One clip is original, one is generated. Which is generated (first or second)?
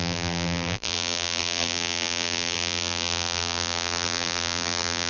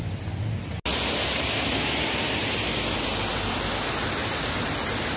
first